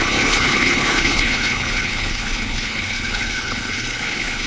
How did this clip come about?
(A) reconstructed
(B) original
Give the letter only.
A